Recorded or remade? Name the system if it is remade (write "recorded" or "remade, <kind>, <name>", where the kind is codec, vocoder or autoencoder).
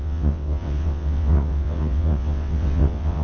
remade, vocoder, WaveNeXt